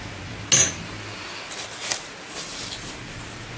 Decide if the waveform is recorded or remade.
recorded